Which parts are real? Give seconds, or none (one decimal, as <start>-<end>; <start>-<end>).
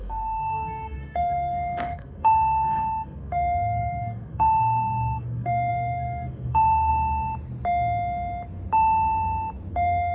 6.9-9.7